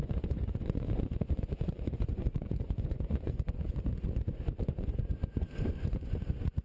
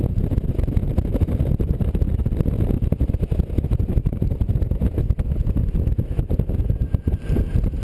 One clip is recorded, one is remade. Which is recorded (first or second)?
second